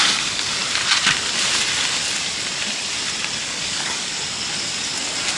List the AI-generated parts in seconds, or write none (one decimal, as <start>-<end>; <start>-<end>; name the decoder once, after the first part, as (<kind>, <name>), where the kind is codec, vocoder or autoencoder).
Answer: 0.0-0.6 (codec, DAC); 3.4-4.1